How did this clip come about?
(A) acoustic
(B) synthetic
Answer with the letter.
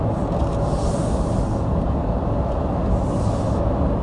A